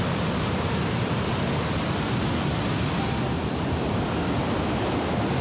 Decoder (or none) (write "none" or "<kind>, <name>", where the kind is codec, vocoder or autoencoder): none